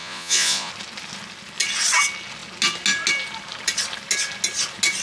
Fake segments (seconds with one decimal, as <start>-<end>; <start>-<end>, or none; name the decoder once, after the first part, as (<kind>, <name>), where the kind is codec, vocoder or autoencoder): 0.0-0.7 (vocoder, Vocos)